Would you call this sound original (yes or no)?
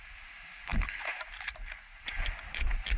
yes